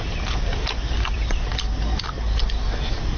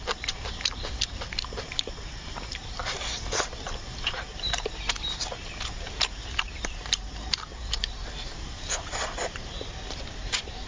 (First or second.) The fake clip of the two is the second